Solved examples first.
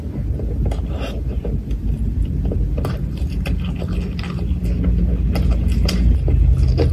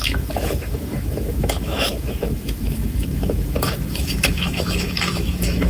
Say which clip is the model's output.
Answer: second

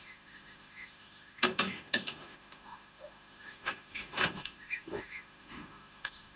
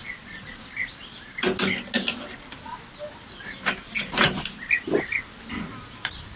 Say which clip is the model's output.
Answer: first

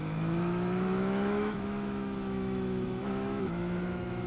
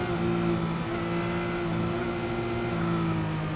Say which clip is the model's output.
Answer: first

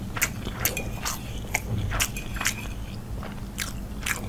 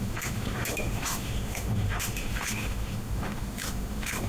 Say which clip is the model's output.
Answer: second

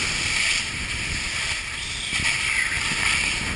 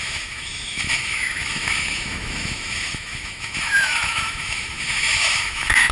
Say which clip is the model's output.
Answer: second